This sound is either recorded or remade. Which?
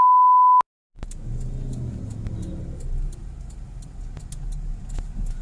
recorded